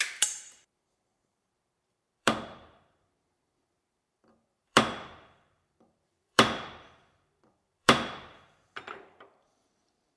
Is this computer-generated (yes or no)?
yes